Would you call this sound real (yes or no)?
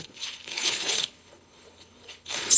no